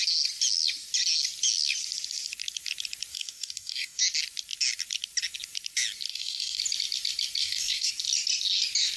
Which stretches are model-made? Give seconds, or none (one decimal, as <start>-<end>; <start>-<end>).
3.1-4.0; 6.1-6.6; 7.4-7.9